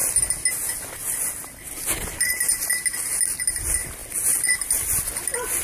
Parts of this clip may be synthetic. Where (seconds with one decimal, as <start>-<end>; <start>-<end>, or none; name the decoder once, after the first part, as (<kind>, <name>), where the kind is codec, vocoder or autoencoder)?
none